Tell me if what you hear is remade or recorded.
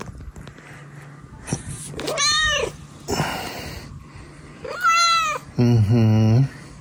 recorded